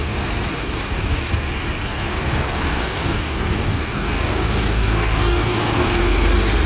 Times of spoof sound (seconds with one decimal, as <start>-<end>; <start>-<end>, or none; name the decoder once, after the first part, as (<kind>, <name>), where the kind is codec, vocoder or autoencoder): 0.5-1.3 (codec, DAC); 2.1-6.0